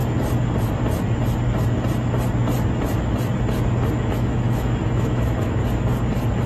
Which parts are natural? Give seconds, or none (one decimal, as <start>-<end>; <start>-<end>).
0.0-3.9; 5.6-6.5